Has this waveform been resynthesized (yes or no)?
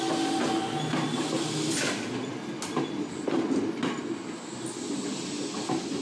no